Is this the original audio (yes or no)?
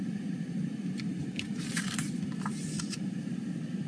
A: yes